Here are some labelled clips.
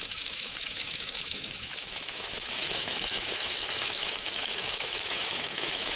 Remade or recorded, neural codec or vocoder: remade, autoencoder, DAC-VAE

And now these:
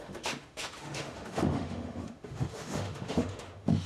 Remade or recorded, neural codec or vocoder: remade, autoencoder, DAC-VAE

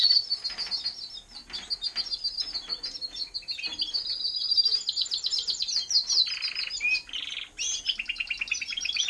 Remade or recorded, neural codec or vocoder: recorded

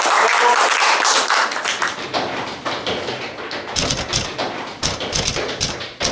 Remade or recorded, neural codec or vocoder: recorded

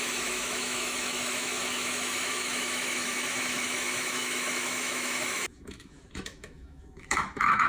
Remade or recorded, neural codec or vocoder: remade, autoencoder, DAC-VAE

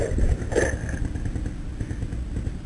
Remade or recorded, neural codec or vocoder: recorded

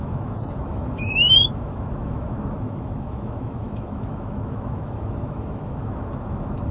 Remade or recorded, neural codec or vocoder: remade, autoencoder, DAC-VAE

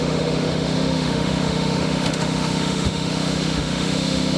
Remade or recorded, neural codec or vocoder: remade, autoencoder, DAC-VAE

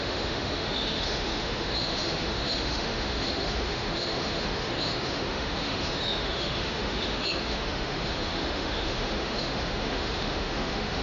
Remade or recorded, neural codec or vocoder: remade, autoencoder, DAC-VAE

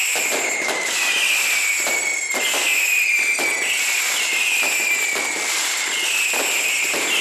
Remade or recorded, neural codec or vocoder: recorded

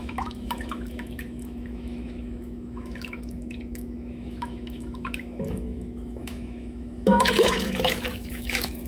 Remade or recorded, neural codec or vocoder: remade, autoencoder, DAC-VAE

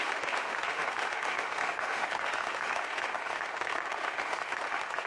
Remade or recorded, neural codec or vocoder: remade, autoencoder, DAC-VAE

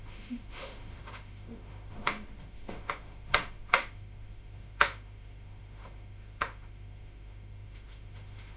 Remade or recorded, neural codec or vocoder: remade, autoencoder, DAC-VAE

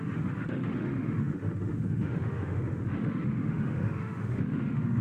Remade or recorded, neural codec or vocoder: remade, autoencoder, DAC-VAE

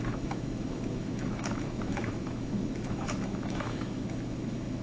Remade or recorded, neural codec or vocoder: remade, autoencoder, DAC-VAE